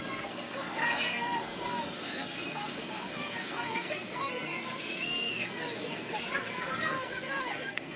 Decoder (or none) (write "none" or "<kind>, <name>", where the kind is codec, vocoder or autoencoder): codec, SNAC